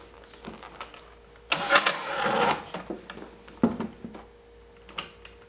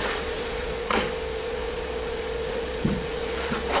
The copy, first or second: second